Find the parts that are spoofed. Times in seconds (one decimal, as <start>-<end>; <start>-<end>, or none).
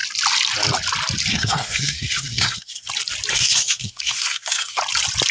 1.3-2.9; 3.3-4.8